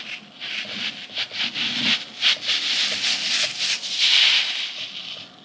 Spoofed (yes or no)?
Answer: no